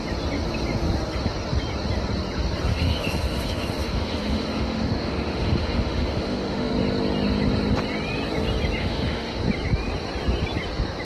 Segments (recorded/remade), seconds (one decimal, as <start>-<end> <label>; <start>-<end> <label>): 0.0-2.7 recorded; 2.7-6.7 remade; 6.7-8.8 recorded; 8.8-9.4 remade; 9.4-11.0 recorded